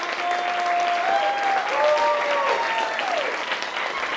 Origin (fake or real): real